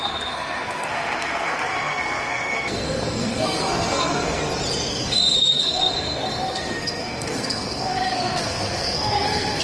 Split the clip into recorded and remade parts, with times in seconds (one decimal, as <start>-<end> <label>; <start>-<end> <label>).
0.0-4.4 remade; 4.4-4.9 recorded; 4.9-9.6 remade